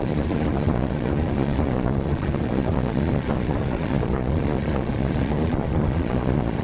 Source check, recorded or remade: remade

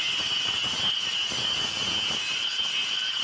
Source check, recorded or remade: recorded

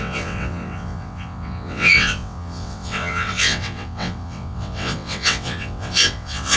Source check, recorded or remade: remade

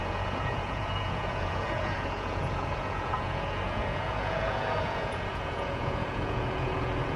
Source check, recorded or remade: remade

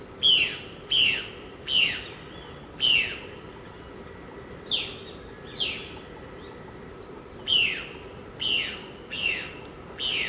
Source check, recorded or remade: recorded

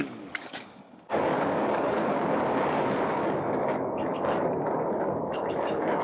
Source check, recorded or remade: remade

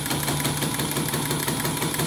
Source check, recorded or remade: recorded